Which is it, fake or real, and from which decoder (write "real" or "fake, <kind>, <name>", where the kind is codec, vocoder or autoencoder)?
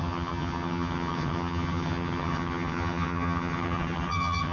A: fake, vocoder, HiFi-GAN